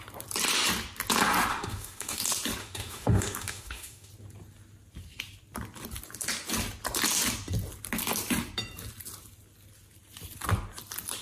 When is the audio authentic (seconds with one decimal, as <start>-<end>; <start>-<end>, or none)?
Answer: 0.0-1.5; 2.2-2.6; 4.1-11.2